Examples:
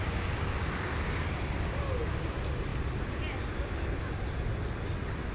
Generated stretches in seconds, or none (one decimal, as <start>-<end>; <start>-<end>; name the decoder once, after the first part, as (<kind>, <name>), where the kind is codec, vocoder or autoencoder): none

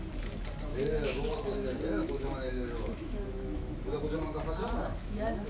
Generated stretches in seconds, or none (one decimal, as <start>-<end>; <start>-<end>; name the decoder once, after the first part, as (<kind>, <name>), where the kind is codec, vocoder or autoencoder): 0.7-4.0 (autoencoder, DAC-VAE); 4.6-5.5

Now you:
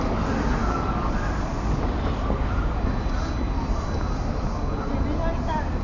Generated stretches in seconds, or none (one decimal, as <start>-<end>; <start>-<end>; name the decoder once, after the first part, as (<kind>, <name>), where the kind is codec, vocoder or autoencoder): none